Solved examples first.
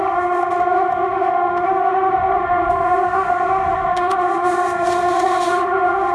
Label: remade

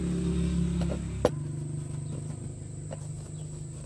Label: recorded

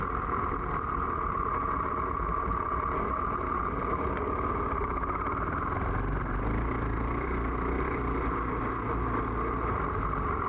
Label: recorded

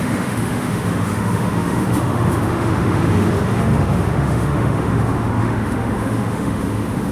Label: remade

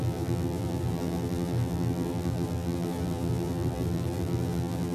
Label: remade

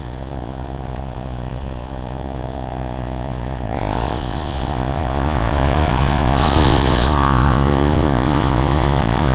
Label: remade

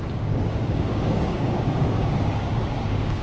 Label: remade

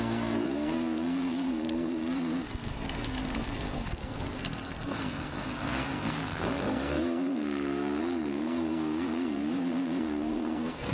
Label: remade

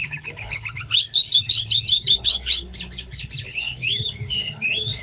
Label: remade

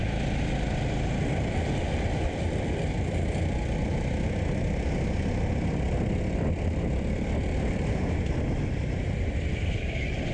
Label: recorded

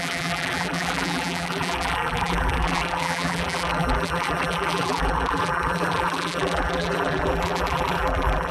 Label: remade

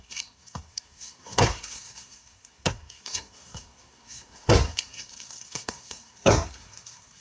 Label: remade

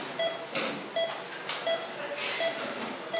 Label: recorded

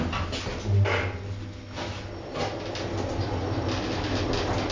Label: recorded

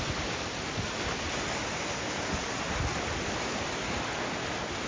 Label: remade